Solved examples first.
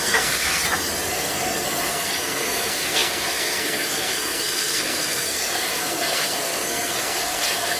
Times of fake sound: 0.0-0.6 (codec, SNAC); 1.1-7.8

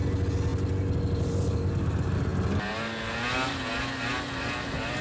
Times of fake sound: none

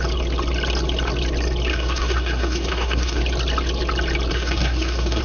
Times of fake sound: 1.7-3.2 (codec, SNAC); 4.3-5.2

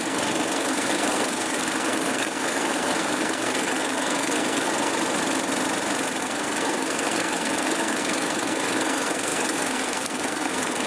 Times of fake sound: 0.0-4.9 (codec, SNAC); 6.2-10.9

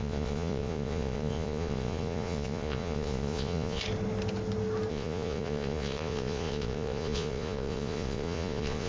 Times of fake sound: 0.0-3.8 (vocoder, Vocos); 4.9-8.9

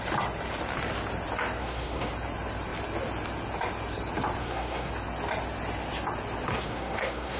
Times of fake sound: 1.6-2.1 (codec, SNAC); 4.4-4.9; 6.5-7.4